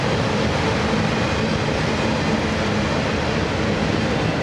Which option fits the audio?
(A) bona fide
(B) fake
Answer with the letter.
A